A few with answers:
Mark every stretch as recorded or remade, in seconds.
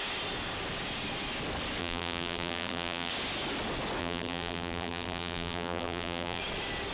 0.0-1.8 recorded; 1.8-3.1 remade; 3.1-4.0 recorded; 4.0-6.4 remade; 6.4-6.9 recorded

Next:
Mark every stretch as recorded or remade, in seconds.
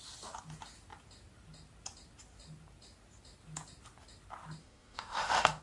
0.0-4.6 recorded; 4.6-5.6 remade